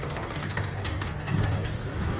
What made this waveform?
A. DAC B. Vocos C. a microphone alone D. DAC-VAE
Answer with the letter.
A